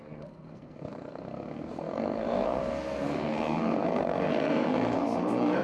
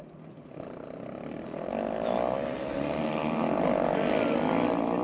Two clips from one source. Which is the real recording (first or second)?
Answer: second